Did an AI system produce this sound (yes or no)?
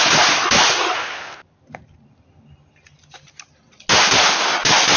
no